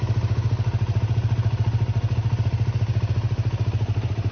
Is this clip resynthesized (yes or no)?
no